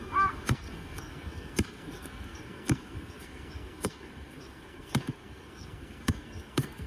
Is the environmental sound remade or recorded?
remade